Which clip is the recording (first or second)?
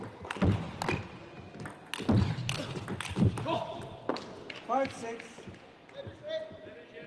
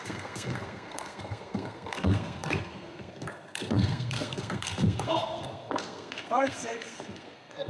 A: first